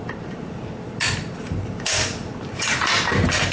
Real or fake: fake